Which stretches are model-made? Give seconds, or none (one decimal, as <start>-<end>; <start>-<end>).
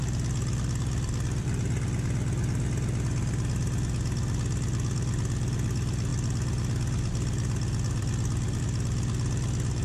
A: none